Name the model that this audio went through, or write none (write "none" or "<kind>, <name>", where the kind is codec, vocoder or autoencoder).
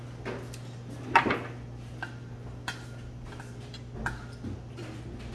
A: none